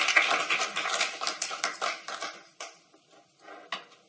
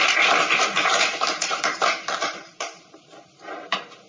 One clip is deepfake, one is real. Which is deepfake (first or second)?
second